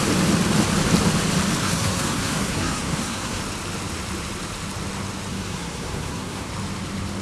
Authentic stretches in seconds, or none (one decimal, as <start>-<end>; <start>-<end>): 0.0-1.6; 3.4-5.3; 6.5-7.2